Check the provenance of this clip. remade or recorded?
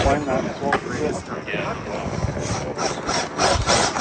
recorded